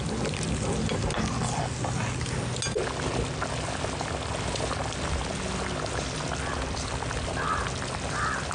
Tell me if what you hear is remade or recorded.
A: recorded